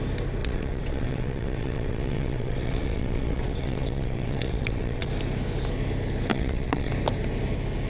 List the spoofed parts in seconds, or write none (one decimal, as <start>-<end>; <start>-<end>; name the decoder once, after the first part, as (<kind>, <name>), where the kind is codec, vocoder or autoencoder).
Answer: 0.4-5.1 (vocoder, WaveNeXt); 6.3-6.9

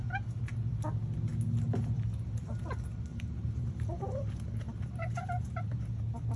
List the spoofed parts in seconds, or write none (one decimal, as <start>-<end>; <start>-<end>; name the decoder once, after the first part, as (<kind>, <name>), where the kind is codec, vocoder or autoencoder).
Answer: 3.1-5.8 (vocoder, BigVGAN v2)